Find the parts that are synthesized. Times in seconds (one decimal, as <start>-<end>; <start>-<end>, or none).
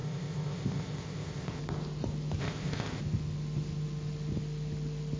0.0-1.6; 2.4-3.0